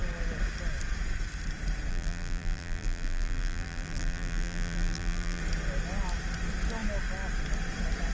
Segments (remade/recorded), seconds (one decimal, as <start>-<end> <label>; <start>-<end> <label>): 0.0-1.9 recorded; 1.9-5.4 remade; 5.4-8.1 recorded

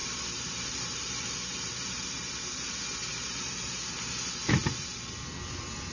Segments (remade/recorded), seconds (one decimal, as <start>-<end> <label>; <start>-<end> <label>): 0.0-2.3 remade; 2.3-3.1 recorded; 3.1-3.9 remade; 3.9-5.9 recorded

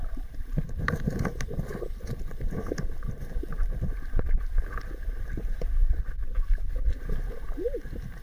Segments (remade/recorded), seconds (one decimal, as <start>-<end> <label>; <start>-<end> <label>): 0.0-8.2 remade

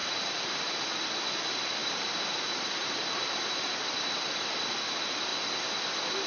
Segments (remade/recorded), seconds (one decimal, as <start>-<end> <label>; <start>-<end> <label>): 0.0-0.8 remade; 0.8-1.8 recorded; 1.8-2.9 remade; 2.9-6.3 recorded

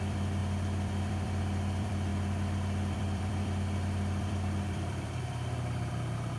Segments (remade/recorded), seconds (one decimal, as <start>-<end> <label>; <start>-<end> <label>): 0.0-6.4 remade